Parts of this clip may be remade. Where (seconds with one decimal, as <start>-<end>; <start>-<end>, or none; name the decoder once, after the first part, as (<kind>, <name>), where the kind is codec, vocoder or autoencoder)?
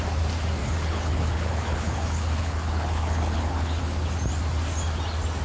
0.6-3.8 (codec, HILCodec)